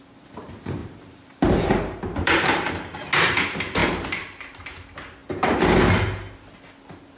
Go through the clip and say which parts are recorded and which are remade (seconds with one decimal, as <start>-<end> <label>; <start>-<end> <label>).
0.0-0.8 recorded; 0.8-2.7 remade; 2.7-3.8 recorded; 3.8-4.7 remade; 4.7-7.2 recorded